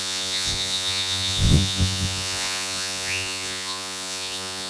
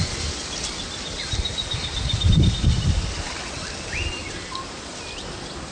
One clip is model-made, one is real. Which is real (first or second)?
second